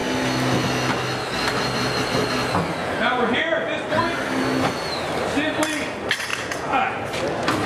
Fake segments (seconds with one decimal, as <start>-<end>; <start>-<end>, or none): 2.8-3.4; 6.3-6.9